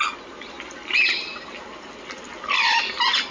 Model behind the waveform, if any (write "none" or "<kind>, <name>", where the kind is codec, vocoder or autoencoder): none